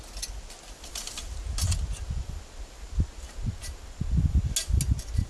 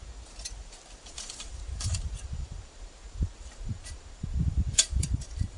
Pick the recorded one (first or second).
first